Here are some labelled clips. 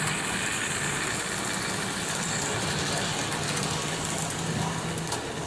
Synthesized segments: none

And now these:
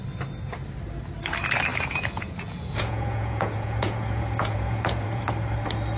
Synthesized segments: 1.7-5.3 (vocoder, Vocos)

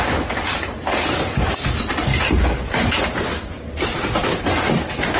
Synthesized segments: 0.0-2.1 (vocoder, BigVGAN v2); 3.0-5.2

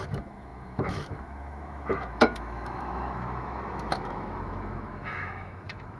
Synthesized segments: 0.0-6.0 (autoencoder, DAC-VAE)

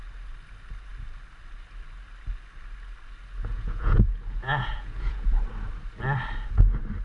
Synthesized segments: 3.4-5.4 (vocoder, Vocos)